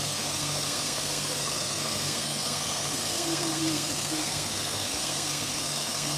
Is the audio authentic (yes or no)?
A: no